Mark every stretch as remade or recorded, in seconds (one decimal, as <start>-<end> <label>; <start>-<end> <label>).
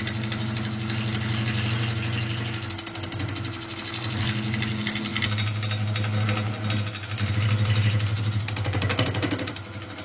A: 0.0-10.0 recorded